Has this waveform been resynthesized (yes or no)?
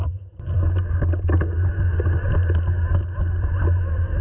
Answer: no